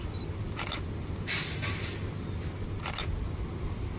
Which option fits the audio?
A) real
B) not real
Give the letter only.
A